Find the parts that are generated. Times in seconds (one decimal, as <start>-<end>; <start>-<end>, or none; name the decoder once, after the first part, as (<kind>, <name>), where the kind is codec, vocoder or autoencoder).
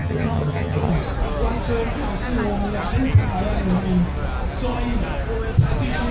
0.0-0.9 (vocoder, HiFi-GAN)